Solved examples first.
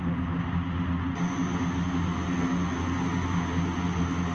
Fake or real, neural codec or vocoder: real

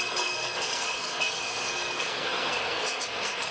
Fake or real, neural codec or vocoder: fake, codec, SNAC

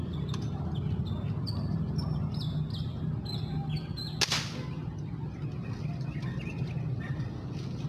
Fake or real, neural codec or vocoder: real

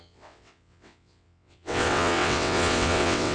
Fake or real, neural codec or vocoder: fake, vocoder, WaveNeXt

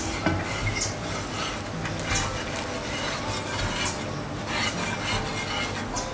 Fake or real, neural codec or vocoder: real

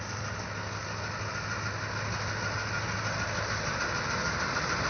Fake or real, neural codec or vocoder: real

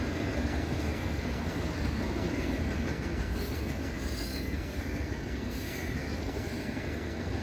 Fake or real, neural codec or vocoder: fake, codec, SNAC